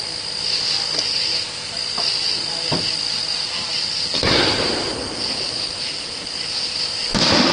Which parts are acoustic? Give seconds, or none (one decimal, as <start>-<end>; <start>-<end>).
0.0-7.5